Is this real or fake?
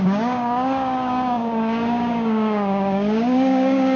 fake